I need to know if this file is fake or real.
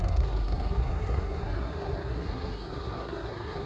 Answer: fake